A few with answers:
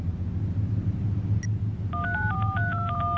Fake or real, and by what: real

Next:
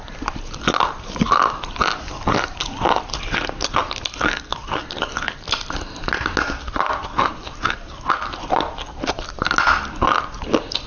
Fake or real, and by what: real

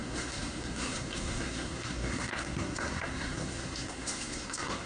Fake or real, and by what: fake, codec, SNAC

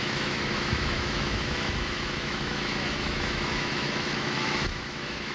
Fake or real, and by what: fake, autoencoder, DAC-VAE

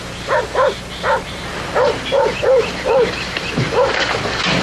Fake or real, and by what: real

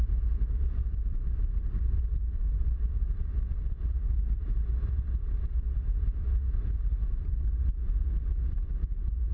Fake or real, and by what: fake, vocoder, BigVGAN v2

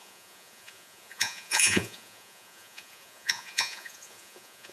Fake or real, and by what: fake, vocoder, Vocos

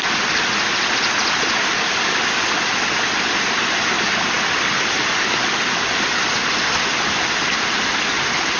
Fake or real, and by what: real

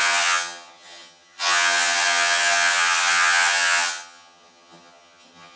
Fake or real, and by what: fake, vocoder, HiFi-GAN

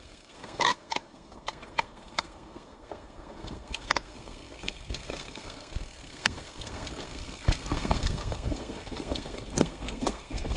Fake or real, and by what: fake, codec, SNAC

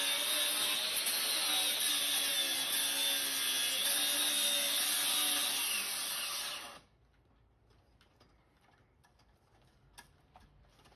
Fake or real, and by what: real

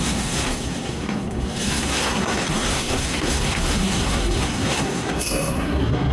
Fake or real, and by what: fake, codec, SNAC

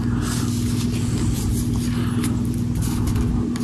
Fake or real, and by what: real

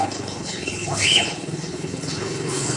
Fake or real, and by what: fake, codec, HILCodec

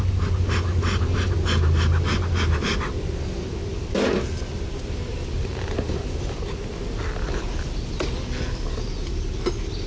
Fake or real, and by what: real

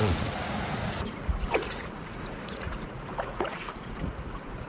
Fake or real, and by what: fake, vocoder, Vocos